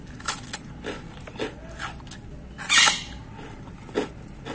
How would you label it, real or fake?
real